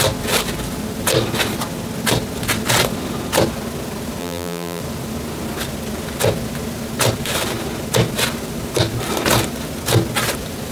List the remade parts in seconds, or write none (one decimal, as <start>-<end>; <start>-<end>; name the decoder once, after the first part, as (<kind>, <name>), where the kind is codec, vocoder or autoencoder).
4.2-4.8 (vocoder, BigVGAN v2)